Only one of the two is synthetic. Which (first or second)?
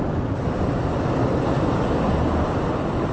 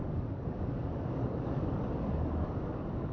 second